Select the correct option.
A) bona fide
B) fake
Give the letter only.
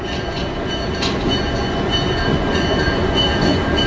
B